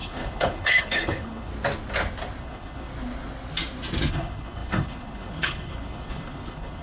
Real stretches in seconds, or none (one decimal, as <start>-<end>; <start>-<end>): 1.5-2.4; 2.9-4.1